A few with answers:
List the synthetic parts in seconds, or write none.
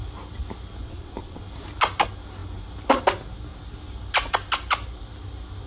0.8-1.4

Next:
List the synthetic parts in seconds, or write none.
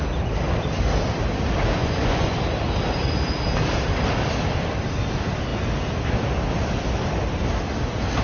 1.8-2.4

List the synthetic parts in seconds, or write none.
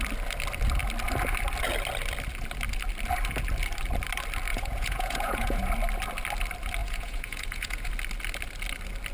4.5-5.7; 6.8-7.9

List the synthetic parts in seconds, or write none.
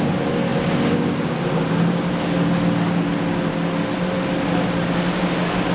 none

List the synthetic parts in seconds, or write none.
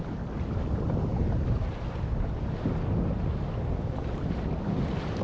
none